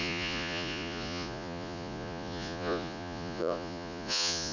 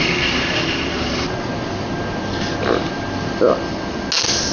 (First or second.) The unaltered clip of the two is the second